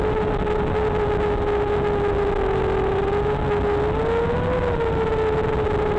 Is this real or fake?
real